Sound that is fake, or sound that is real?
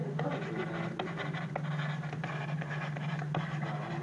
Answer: real